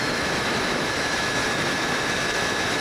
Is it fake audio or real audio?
fake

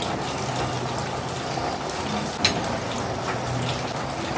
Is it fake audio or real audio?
real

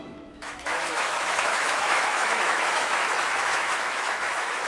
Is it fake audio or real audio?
fake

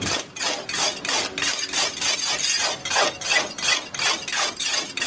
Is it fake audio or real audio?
real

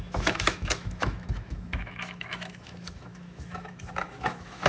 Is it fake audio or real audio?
fake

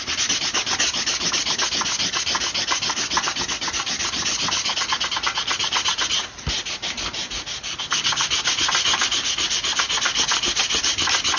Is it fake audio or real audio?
real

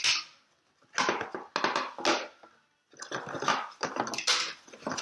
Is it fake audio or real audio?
real